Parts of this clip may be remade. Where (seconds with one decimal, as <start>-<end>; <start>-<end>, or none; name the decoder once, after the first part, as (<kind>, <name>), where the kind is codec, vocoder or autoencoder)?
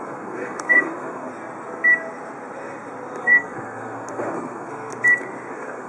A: 0.0-1.3 (codec, SNAC); 3.2-4.9; 5.5-5.9